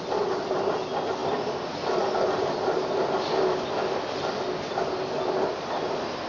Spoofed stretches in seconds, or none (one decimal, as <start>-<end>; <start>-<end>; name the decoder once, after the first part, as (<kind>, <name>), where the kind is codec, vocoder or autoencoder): none